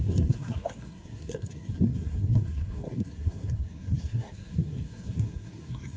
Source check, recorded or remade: remade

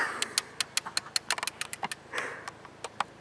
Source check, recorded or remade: recorded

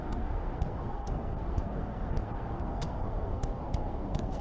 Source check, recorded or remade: remade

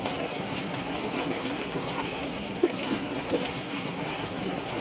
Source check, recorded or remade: remade